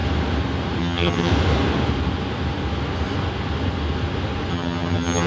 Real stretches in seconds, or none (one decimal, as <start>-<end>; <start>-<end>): 0.0-0.8; 1.3-4.5